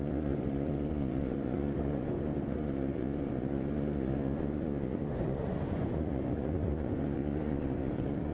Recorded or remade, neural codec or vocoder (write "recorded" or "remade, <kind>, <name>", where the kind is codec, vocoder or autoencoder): remade, vocoder, Vocos